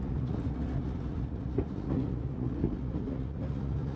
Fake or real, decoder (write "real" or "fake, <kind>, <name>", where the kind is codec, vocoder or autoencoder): fake, vocoder, Vocos